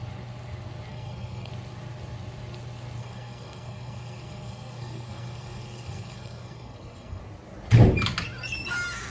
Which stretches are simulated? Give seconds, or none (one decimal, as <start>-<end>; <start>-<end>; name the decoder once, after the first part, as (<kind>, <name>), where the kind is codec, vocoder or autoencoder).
0.9-1.5 (codec, SNAC); 3.0-7.2